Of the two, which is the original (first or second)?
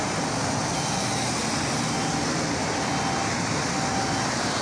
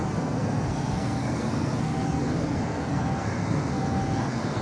first